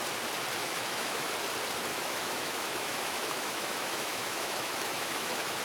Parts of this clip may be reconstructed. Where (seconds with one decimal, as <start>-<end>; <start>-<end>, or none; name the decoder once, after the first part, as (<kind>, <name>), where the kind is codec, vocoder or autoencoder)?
0.6-1.3 (autoencoder, DAC-VAE); 1.9-5.6